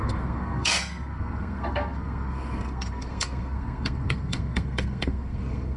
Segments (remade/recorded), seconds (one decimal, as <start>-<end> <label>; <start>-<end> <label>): 0.0-5.8 remade